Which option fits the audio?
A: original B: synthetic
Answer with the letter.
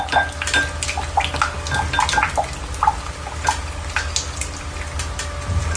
A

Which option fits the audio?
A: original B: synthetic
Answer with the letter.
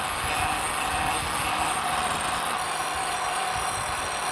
A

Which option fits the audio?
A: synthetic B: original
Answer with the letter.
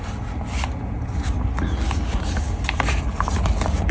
B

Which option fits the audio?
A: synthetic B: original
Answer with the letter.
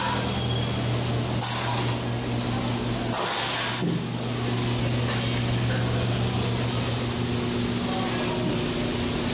B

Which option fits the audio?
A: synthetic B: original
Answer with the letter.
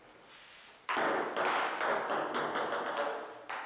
B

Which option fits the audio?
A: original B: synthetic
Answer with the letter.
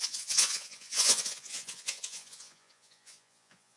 B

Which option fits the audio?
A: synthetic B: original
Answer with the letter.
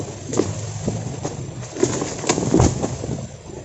B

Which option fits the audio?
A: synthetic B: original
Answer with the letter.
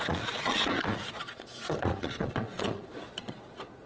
A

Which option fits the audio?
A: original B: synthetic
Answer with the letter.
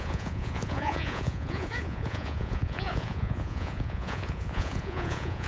B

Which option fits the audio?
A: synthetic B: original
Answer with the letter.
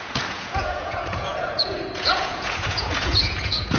A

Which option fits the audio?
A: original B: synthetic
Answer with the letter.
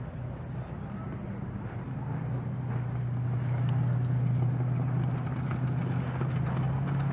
A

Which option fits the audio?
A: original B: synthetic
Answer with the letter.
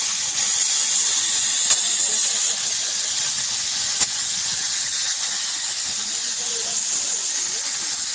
B